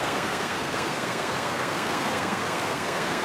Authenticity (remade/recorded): remade